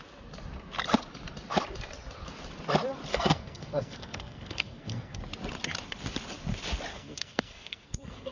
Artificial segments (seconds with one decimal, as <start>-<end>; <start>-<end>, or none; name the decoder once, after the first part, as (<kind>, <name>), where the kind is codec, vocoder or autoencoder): 3.1-5.2 (codec, SNAC); 6.9-8.3